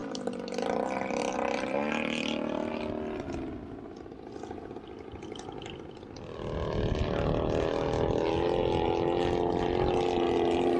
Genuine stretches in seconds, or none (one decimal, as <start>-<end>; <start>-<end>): 0.0-10.8